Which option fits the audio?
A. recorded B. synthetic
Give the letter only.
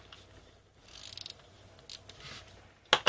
A